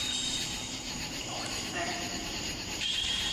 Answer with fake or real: fake